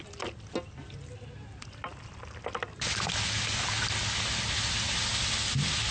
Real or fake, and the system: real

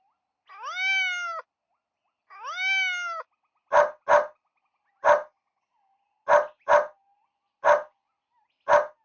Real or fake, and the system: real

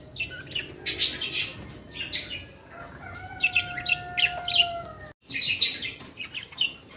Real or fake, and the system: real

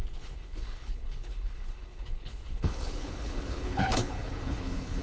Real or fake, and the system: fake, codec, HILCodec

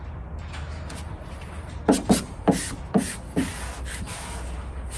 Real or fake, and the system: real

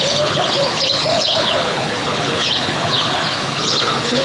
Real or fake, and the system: fake, codec, HILCodec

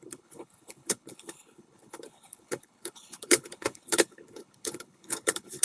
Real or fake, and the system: fake, codec, HILCodec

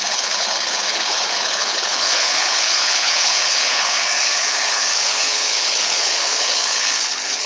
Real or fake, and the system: fake, codec, HILCodec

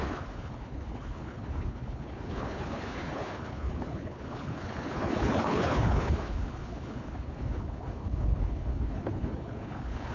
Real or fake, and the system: fake, codec, HILCodec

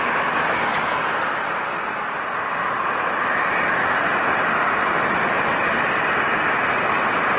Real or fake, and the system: real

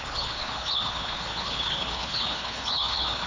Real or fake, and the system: fake, codec, HILCodec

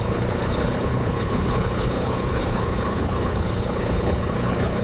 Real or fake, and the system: fake, codec, HILCodec